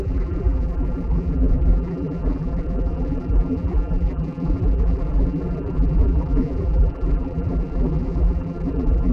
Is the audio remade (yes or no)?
yes